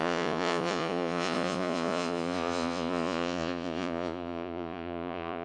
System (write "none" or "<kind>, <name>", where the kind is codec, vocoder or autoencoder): vocoder, Vocos